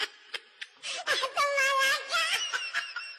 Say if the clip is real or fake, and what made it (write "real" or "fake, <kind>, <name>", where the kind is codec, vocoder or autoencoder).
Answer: real